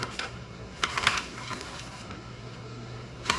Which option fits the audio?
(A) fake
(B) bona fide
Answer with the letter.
A